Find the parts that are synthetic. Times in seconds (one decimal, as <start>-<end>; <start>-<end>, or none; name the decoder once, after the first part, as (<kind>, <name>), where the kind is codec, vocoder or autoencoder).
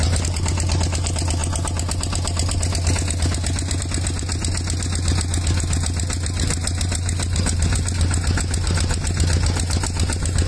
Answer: none